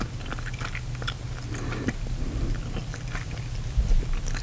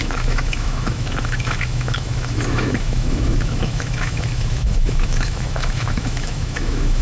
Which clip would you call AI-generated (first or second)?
second